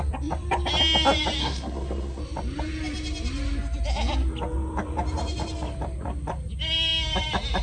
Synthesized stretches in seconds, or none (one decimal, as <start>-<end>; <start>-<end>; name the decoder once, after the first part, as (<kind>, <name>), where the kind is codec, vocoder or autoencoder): 1.4-2.2 (codec, SNAC)